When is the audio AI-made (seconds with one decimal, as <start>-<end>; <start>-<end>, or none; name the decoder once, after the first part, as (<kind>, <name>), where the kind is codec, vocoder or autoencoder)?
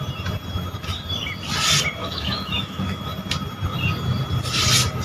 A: 2.0-3.0 (autoencoder, DAC-VAE)